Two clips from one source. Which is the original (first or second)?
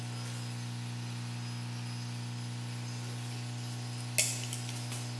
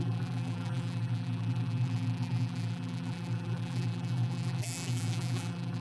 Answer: first